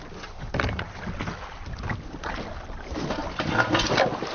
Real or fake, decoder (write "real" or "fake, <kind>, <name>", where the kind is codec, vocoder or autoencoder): real